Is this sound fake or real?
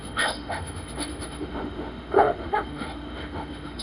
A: fake